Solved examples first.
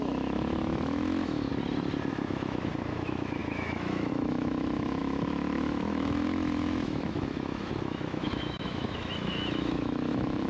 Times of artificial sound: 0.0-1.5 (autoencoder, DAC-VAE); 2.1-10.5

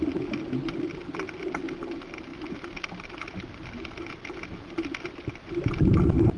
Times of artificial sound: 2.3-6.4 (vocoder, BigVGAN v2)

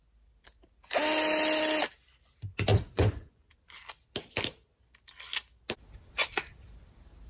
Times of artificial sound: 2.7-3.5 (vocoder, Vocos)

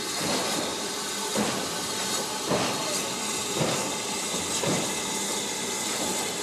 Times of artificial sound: none

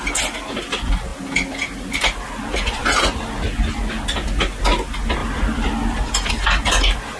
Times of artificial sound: 5.2-6.3 (vocoder, BigVGAN v2)